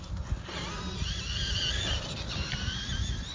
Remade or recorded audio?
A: recorded